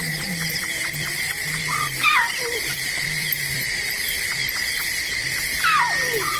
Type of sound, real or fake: fake